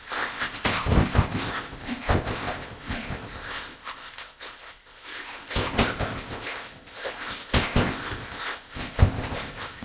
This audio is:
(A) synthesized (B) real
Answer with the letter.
A